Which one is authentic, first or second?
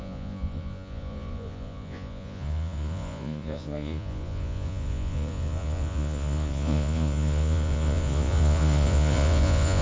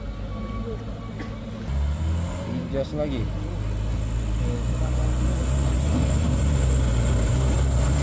second